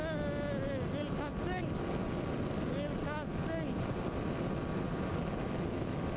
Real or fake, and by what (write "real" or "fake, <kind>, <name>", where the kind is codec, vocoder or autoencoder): real